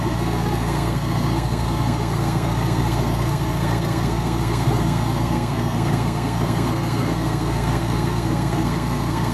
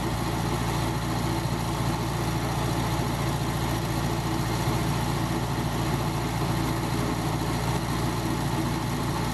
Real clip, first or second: second